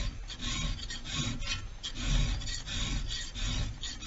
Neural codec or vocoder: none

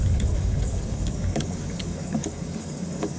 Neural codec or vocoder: codec, DAC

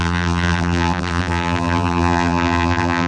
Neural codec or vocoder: vocoder, BigVGAN v2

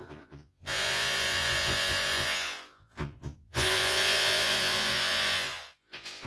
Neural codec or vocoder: vocoder, Vocos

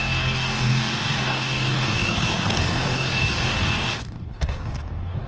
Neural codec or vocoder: codec, DAC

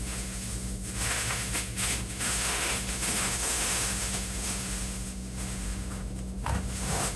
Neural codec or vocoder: autoencoder, DAC-VAE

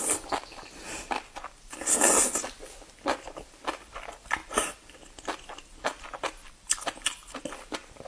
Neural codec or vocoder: none